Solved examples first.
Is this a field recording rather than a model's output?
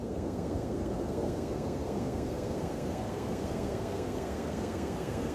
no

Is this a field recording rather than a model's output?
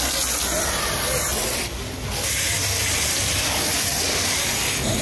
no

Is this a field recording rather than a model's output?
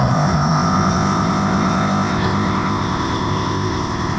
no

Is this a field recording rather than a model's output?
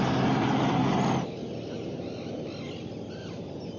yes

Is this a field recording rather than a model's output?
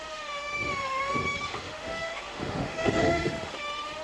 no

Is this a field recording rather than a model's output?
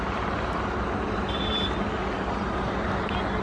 yes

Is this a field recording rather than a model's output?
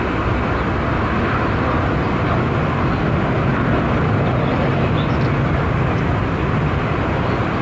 yes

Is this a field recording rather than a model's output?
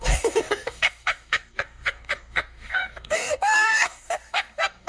no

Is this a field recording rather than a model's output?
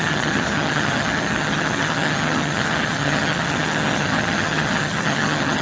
no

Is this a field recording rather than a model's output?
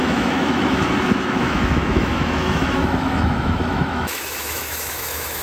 no